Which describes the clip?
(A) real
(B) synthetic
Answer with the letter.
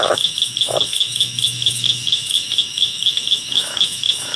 B